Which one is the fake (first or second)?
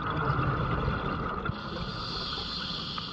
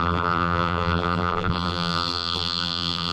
second